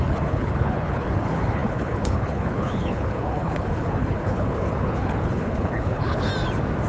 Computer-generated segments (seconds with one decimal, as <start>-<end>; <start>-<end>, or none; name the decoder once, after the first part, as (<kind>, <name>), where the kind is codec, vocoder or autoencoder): 0.0-6.3 (codec, HILCodec)